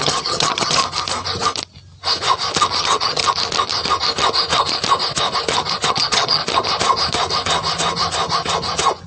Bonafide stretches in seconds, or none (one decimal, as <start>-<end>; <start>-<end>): 0.8-2.8; 3.2-5.9; 6.4-9.1